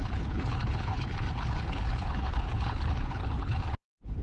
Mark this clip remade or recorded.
remade